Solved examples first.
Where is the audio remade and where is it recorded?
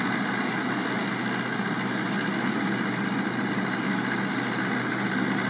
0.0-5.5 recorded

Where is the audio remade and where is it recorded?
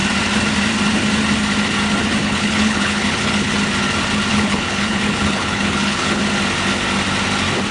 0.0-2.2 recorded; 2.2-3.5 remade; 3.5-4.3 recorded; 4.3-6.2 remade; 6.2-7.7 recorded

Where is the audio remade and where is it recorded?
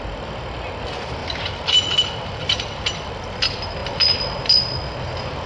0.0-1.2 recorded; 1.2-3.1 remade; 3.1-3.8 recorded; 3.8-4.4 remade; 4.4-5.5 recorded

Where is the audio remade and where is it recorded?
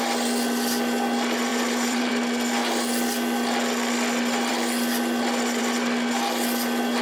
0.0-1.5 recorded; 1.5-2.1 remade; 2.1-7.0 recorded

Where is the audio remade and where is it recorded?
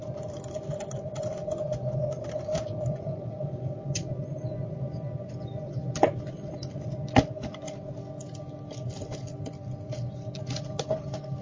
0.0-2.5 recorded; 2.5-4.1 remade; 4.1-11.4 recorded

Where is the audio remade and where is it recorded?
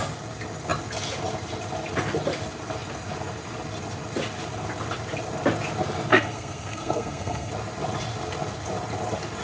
0.0-6.1 recorded; 6.1-7.5 remade; 7.5-9.4 recorded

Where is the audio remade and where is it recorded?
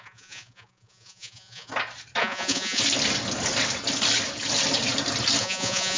0.0-1.7 remade; 1.7-2.2 recorded; 2.2-2.8 remade; 2.8-5.4 recorded; 5.4-6.0 remade